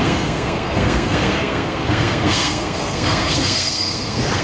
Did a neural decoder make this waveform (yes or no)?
yes